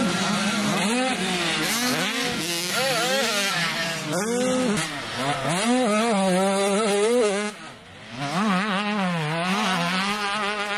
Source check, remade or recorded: recorded